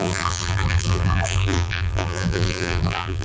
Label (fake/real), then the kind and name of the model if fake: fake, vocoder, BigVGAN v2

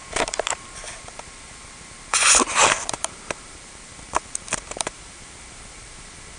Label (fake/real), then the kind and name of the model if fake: fake, vocoder, BigVGAN v2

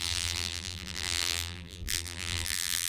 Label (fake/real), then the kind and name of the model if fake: fake, vocoder, BigVGAN v2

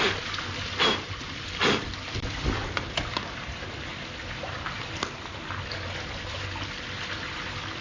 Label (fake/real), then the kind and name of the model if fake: real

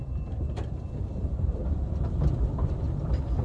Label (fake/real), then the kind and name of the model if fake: fake, vocoder, BigVGAN v2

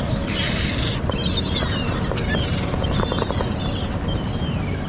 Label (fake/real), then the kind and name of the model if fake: fake, vocoder, BigVGAN v2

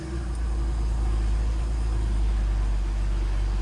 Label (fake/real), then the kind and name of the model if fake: real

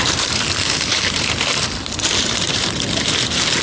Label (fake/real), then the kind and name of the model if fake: fake, vocoder, BigVGAN v2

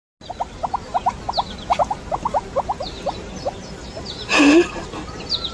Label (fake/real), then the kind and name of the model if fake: real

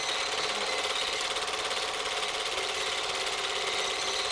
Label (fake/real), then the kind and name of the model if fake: real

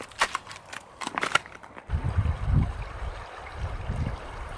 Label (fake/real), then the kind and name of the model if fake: fake, vocoder, BigVGAN v2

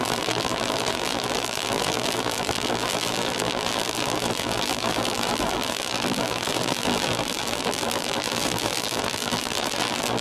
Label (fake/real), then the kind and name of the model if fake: fake, vocoder, BigVGAN v2